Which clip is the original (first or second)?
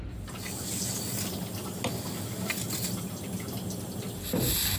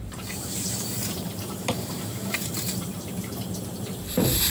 first